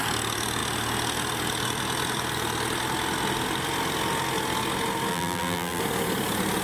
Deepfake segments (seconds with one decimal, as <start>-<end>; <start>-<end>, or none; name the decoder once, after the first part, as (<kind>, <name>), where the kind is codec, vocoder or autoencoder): 5.1-5.8 (vocoder, BigVGAN v2)